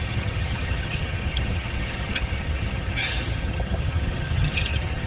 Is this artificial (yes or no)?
yes